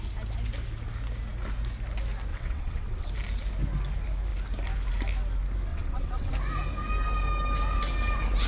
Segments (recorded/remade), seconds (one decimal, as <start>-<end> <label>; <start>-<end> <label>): 0.0-2.3 recorded; 2.3-3.1 remade; 3.1-5.7 recorded; 5.7-6.3 remade; 6.3-8.5 recorded